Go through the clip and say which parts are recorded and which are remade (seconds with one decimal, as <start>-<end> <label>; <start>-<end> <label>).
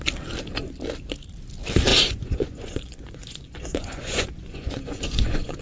0.0-1.9 recorded; 1.9-5.6 remade